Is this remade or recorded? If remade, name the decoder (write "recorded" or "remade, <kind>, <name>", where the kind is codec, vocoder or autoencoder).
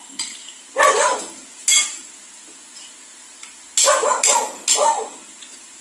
recorded